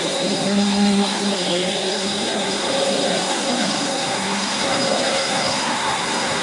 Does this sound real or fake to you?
fake